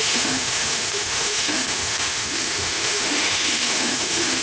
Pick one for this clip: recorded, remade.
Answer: remade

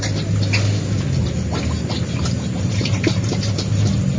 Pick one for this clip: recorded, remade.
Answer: recorded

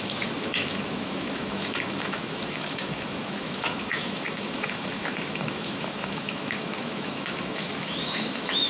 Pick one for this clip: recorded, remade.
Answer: remade